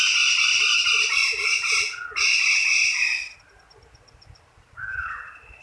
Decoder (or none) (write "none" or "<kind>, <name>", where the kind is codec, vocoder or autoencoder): none